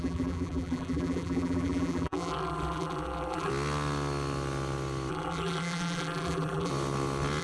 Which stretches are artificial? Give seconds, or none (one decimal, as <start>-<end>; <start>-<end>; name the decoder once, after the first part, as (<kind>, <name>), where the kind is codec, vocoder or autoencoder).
0.0-3.5 (vocoder, BigVGAN v2); 5.1-6.7